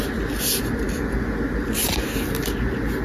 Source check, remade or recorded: recorded